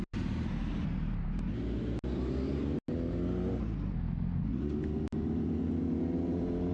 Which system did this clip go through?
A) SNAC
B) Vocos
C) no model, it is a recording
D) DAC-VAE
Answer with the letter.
C